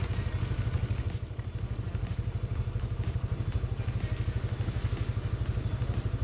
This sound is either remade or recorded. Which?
recorded